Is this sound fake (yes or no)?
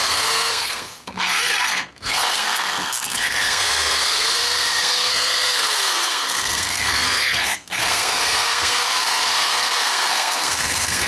yes